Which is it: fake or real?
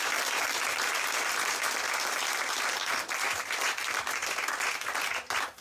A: real